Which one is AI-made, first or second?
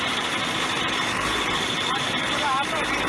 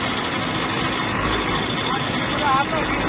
first